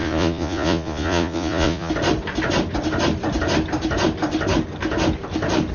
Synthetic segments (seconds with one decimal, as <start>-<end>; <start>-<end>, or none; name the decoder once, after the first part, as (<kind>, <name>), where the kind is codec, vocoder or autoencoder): 0.0-1.9 (vocoder, Vocos)